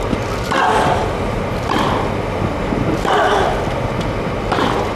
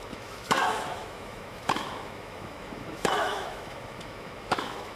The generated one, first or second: second